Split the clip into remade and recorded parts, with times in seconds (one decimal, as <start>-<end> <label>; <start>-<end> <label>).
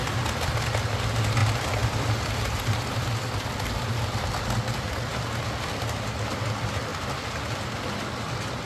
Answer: 0.0-1.4 recorded; 1.4-3.9 remade; 3.9-6.9 recorded; 6.9-7.4 remade; 7.4-8.7 recorded